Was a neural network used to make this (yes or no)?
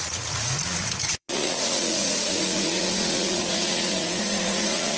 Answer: yes